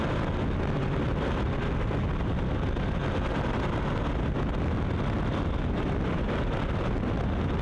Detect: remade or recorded recorded